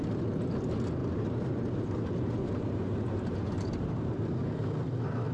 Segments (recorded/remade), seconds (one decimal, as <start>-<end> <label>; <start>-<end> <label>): 0.0-1.0 recorded; 1.0-4.2 remade; 4.2-5.3 recorded